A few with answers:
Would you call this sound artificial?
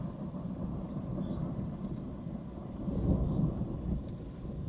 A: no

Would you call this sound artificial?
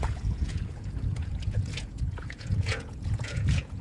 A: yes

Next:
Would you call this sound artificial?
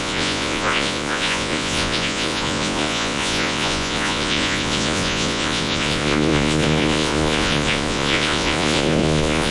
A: yes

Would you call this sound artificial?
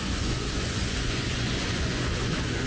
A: yes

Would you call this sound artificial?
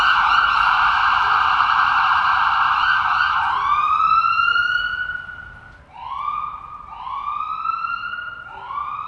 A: no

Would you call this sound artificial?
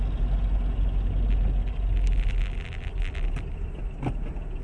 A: no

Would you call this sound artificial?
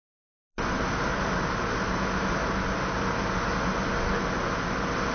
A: no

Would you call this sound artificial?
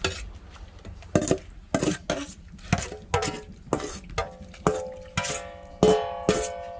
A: no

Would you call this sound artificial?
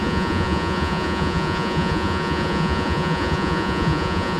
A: yes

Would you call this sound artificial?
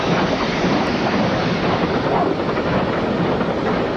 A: no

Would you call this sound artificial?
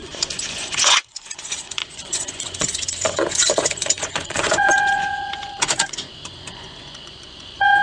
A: yes